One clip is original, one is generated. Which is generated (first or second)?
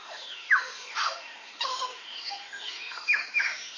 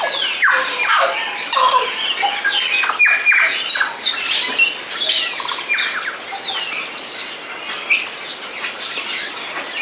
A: first